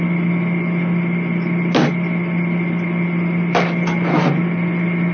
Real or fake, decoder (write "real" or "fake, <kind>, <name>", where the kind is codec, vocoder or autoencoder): real